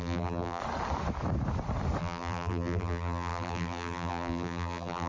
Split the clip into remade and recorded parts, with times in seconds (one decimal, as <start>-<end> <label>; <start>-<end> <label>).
0.0-0.6 remade; 0.6-2.0 recorded; 2.0-5.1 remade